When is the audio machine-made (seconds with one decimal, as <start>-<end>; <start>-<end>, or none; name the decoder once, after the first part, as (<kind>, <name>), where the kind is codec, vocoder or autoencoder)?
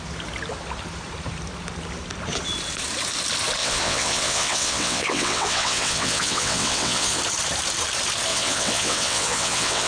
3.6-7.2 (vocoder, WaveNeXt); 8.3-9.9